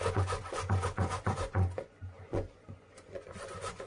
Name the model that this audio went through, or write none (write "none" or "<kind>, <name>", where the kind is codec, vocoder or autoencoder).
vocoder, Vocos